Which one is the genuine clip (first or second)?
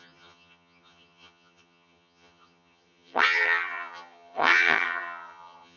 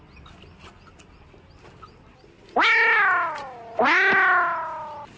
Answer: second